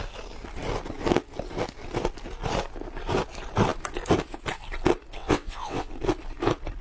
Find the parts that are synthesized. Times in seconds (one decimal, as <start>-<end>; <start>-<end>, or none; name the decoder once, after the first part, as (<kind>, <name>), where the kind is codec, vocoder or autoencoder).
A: 5.2-5.9 (vocoder, WaveNeXt)